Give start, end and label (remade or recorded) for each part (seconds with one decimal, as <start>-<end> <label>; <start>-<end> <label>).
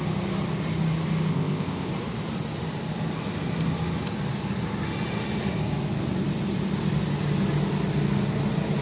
0.0-1.3 recorded; 1.3-1.9 remade; 1.9-8.8 recorded